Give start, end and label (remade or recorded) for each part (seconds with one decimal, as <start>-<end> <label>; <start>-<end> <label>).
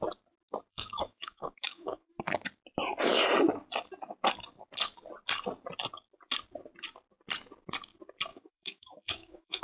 0.0-0.7 recorded; 0.7-2.1 remade; 2.1-8.3 recorded; 8.3-9.6 remade